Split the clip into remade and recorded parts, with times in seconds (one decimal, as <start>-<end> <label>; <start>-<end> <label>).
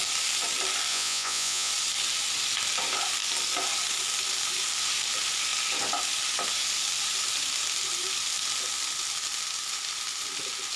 0.0-0.9 recorded; 0.9-1.7 remade; 1.7-10.8 recorded